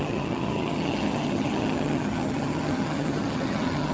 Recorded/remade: remade